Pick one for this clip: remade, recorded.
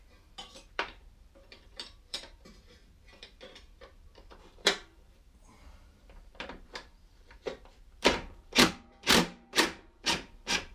remade